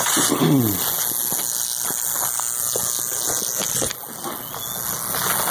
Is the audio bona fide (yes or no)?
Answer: yes